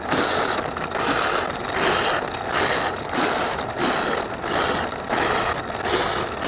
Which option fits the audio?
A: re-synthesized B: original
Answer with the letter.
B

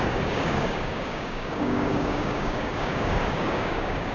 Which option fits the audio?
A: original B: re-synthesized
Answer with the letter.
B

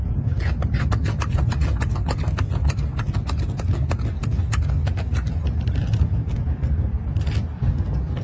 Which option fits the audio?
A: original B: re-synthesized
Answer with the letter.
A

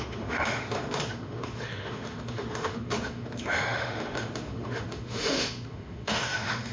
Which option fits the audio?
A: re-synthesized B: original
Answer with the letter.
A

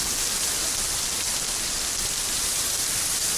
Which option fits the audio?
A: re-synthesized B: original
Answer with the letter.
B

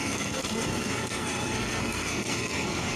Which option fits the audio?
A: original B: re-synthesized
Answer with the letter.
B